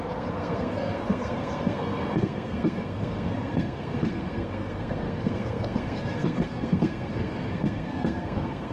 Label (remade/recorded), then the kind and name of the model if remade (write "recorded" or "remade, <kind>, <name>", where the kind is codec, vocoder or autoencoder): remade, codec, SNAC